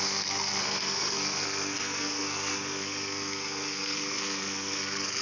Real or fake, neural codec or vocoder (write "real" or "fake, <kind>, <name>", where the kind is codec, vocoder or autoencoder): fake, codec, SNAC